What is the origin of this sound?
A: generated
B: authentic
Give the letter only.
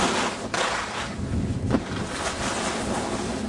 B